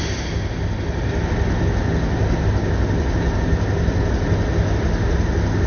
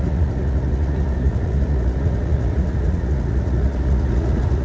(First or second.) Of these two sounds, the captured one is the first